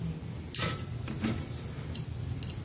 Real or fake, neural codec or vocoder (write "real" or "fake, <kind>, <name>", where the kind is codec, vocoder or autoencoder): real